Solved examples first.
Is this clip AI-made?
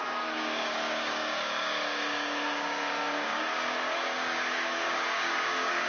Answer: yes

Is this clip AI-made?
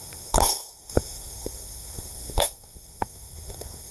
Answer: yes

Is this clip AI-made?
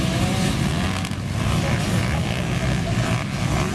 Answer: no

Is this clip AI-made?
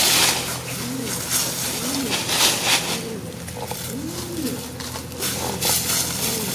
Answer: no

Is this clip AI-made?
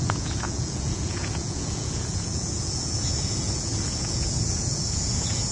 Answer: yes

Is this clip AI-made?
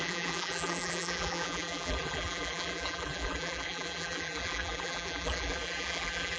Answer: yes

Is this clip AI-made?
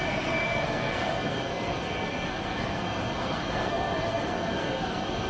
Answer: yes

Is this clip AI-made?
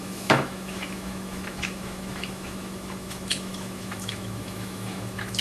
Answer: yes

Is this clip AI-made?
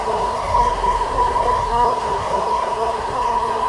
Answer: yes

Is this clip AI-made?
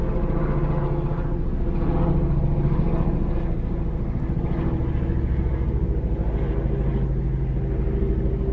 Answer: no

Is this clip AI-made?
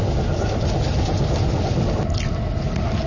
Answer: no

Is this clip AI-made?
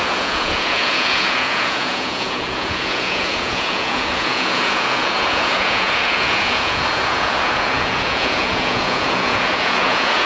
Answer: yes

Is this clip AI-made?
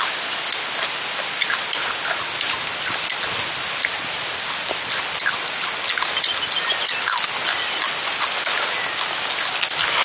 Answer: no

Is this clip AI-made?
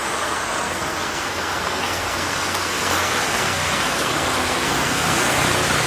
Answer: yes